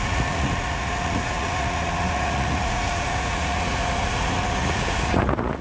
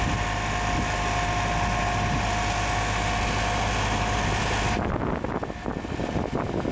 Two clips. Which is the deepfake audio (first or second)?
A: first